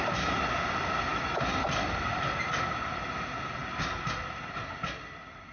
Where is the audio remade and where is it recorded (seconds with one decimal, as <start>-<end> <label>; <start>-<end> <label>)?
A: 0.0-5.5 recorded